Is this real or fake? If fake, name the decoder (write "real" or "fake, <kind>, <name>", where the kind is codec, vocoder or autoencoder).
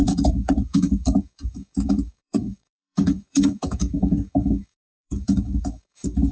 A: fake, codec, DAC